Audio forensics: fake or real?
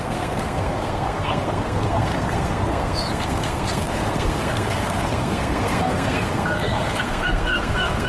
fake